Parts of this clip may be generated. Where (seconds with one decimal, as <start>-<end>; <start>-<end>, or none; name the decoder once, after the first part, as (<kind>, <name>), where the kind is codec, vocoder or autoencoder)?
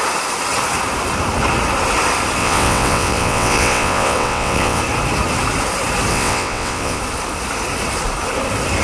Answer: 2.4-4.8 (vocoder, WaveNeXt); 6.1-7.0